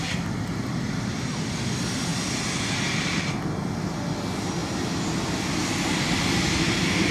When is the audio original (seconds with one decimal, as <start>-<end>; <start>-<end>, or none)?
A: 0.0-7.1